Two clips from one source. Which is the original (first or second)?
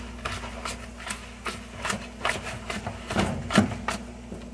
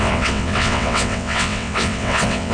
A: first